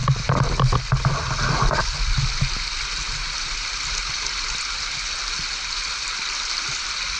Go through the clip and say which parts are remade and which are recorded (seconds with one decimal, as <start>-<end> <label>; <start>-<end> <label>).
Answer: 0.0-7.2 recorded